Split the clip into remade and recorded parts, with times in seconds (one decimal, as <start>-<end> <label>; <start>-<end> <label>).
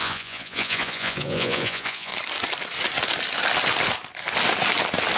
0.0-2.1 remade; 2.1-5.2 recorded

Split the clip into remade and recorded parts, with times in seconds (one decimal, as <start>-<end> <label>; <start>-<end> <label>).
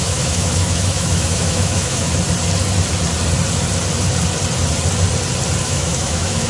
0.0-2.1 remade; 2.1-5.6 recorded; 5.6-6.5 remade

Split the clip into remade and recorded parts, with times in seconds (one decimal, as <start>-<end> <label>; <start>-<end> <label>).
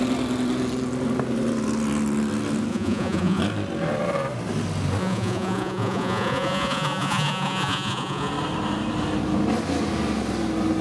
0.0-2.7 recorded; 2.7-3.4 remade; 3.4-5.0 recorded; 5.0-8.3 remade; 8.3-10.8 recorded